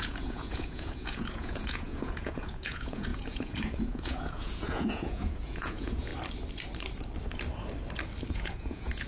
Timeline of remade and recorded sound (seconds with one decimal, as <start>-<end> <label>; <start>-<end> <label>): 0.0-6.1 remade; 6.1-8.3 recorded; 8.3-9.1 remade